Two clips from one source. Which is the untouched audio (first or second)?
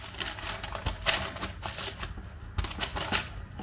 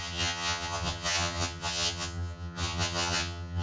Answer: first